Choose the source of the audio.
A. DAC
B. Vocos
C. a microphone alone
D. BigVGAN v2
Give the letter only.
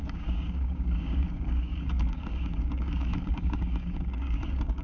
A